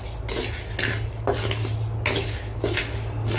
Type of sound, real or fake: real